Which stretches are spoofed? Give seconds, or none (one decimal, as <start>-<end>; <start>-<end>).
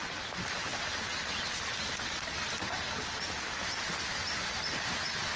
none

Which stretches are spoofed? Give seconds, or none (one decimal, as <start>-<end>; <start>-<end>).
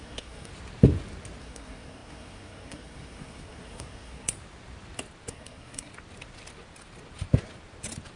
0.0-0.5; 1.4-4.3; 5.3-5.9